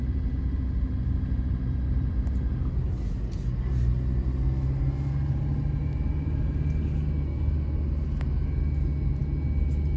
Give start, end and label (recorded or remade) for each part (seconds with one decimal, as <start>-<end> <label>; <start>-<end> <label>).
0.0-10.0 recorded